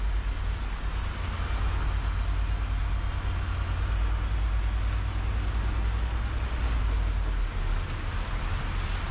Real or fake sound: real